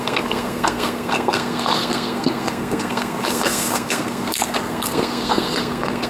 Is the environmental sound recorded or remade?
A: remade